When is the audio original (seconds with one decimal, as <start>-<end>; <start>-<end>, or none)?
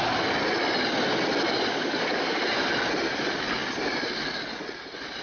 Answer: 0.0-1.7; 2.4-5.2